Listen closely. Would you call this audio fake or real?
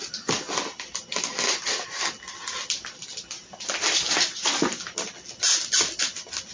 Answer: real